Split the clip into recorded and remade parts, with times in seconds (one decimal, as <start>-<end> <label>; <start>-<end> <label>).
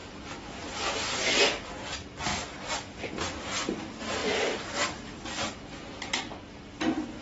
0.0-1.2 remade; 1.2-4.2 recorded; 4.2-5.6 remade; 5.6-7.2 recorded